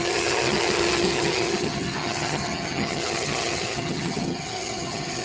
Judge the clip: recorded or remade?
remade